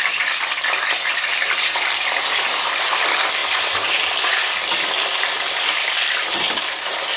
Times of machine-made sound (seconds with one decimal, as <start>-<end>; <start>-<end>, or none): none